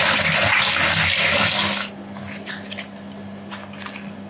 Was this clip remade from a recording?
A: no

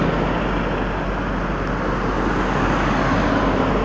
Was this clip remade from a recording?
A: no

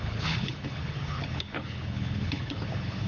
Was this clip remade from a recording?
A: yes